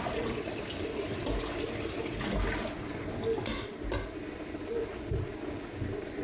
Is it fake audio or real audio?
real